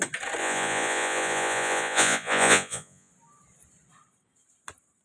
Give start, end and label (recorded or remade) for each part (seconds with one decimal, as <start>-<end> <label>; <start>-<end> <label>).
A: 0.0-0.4 recorded; 0.4-3.1 remade; 3.1-5.0 recorded